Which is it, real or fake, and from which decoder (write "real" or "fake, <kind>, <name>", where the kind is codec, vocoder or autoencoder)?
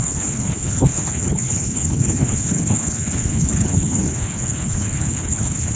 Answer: fake, codec, HILCodec